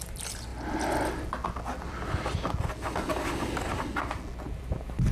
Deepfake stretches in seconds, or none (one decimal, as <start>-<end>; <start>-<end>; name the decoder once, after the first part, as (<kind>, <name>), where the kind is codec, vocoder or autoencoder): none